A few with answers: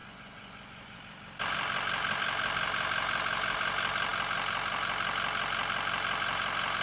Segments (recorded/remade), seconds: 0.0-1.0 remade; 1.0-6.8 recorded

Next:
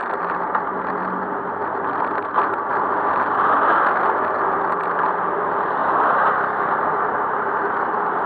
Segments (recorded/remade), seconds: 0.0-8.3 recorded